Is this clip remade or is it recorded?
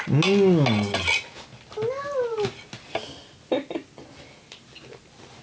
recorded